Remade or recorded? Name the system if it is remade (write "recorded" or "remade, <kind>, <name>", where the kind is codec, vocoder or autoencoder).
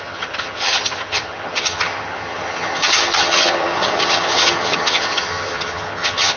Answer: remade, vocoder, HiFi-GAN